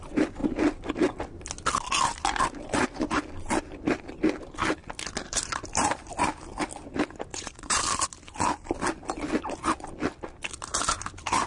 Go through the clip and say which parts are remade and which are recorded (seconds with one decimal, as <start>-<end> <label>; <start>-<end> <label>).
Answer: 0.0-7.3 recorded; 7.3-7.8 remade; 7.8-11.5 recorded